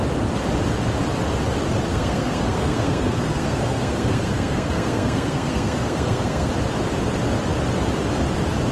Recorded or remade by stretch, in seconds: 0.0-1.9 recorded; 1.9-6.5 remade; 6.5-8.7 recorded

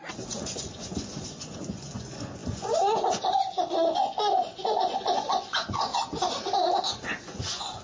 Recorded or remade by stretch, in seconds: 0.0-5.9 remade; 5.9-6.8 recorded; 6.8-7.8 remade